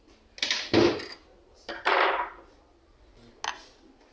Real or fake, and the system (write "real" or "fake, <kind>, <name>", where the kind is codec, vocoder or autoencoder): real